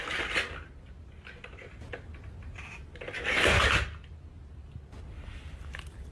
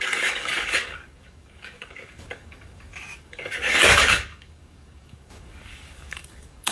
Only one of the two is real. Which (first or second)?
first